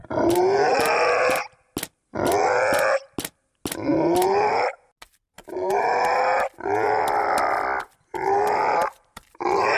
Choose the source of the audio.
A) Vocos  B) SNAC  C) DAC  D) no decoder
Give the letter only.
D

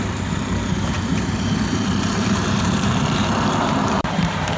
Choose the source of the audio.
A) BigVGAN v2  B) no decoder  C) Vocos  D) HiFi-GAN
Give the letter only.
A